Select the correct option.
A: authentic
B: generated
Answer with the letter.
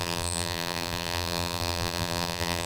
B